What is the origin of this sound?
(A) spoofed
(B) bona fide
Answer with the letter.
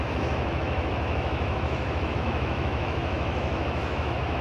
A